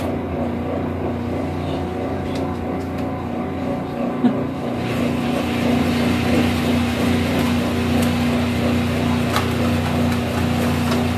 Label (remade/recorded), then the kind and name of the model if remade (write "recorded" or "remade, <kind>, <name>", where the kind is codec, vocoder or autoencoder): recorded